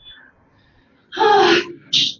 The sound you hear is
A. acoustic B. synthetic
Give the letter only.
A